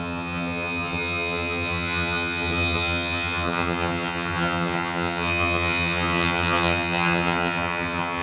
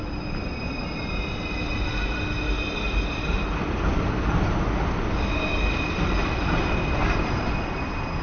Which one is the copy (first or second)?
first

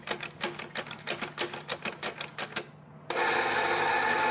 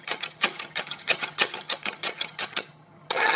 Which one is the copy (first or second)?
second